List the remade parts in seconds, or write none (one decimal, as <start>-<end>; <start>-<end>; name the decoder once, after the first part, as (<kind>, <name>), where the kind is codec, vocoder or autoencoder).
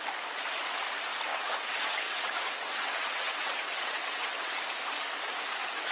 1.3-4.6 (vocoder, WaveNeXt)